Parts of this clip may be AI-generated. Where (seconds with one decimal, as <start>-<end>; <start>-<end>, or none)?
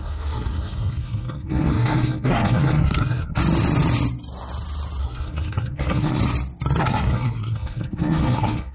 0.0-3.4; 5.0-6.2; 6.8-8.7